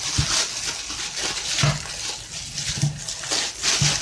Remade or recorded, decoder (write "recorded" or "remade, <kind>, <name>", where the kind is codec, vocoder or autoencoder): recorded